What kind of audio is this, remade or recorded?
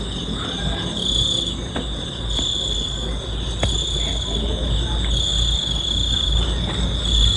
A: recorded